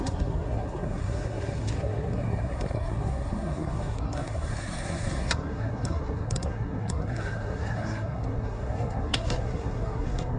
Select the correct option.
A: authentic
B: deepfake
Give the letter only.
B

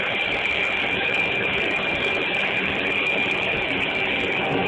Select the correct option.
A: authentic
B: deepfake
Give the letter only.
B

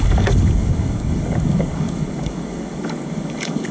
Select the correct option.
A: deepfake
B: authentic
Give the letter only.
A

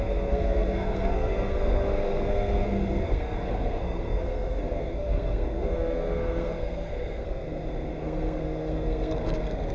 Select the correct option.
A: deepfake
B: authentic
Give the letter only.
A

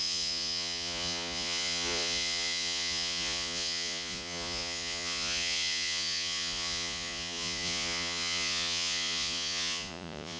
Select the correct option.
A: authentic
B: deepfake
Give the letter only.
B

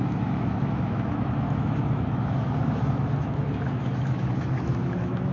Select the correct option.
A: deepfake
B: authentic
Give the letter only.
A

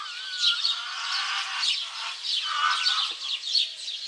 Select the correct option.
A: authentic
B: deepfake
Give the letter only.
A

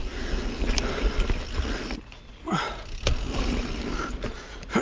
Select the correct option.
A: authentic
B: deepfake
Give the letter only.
A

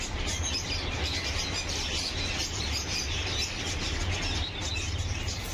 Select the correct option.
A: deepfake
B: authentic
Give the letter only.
B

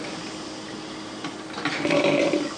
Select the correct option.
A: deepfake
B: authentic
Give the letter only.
B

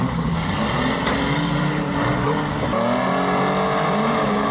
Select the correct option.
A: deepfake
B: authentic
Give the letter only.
B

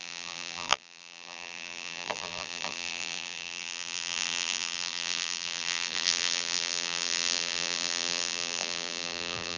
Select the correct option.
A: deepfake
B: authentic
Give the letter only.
A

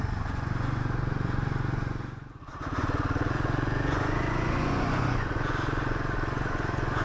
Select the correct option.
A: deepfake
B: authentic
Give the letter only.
A